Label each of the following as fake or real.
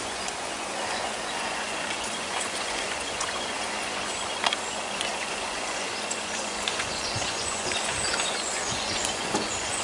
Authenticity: fake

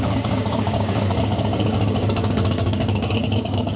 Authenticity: fake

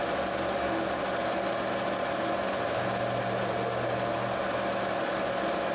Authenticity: real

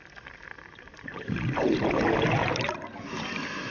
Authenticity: real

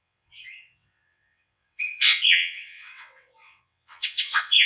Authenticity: fake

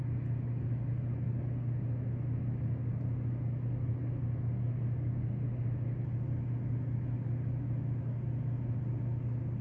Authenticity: real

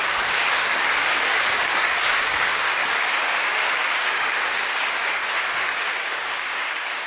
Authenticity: fake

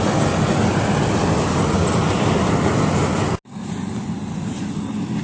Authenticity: real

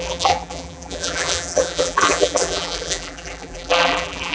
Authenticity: fake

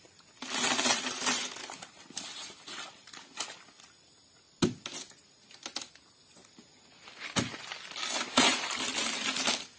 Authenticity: real